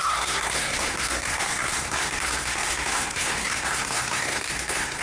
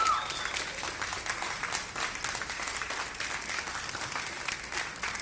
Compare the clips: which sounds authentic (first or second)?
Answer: second